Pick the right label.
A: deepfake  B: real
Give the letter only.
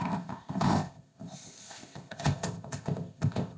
A